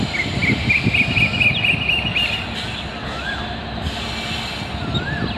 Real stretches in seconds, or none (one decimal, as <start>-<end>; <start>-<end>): 0.0-5.4